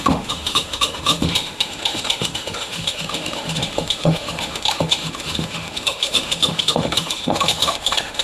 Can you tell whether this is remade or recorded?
remade